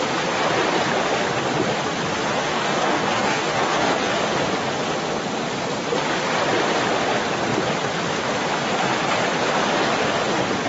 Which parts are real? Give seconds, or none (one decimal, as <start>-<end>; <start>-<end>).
0.0-2.4; 4.1-10.7